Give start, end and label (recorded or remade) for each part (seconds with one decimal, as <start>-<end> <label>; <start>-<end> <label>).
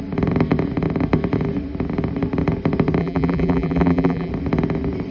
0.0-3.0 recorded; 3.0-4.3 remade; 4.3-5.1 recorded